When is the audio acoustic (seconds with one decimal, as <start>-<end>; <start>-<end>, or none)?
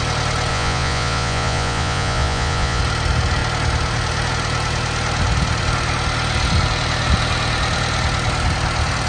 0.0-0.5; 2.8-9.1